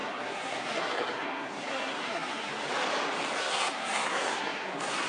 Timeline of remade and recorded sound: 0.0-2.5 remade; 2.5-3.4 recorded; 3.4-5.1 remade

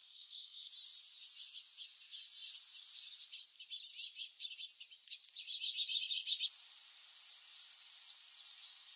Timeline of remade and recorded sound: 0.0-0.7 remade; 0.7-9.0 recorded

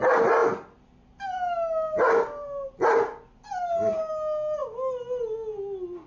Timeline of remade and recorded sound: 0.0-6.1 recorded